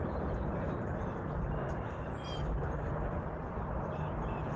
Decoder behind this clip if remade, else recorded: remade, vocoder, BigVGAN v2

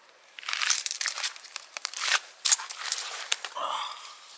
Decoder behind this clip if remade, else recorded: remade, vocoder, BigVGAN v2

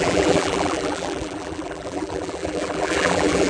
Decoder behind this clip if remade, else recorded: remade, vocoder, BigVGAN v2